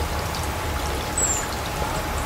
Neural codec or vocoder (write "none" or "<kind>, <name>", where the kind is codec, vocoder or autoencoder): vocoder, BigVGAN v2